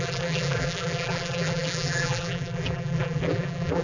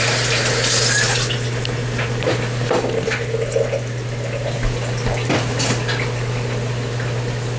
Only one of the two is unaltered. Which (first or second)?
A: second